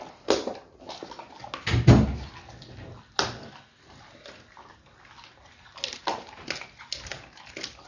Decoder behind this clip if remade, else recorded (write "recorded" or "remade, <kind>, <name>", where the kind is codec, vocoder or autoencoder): recorded